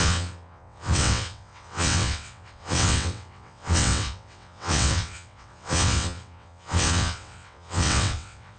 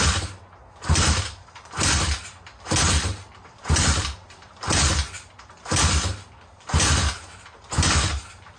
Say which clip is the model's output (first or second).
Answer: first